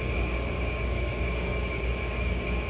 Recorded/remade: remade